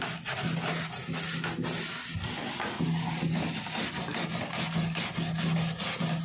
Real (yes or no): yes